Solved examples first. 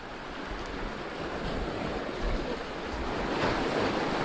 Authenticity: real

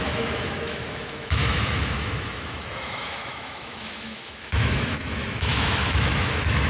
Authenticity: fake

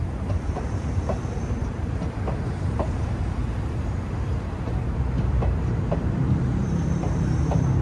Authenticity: fake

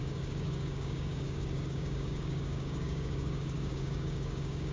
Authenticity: fake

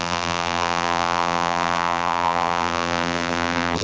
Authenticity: fake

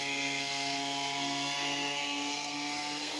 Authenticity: fake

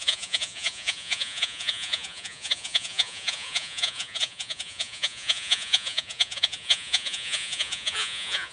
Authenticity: fake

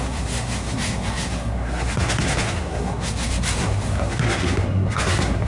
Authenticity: fake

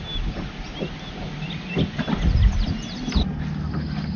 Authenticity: real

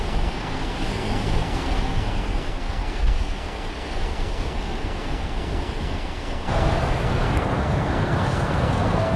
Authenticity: fake